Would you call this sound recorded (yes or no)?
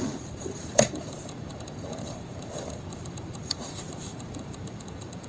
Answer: no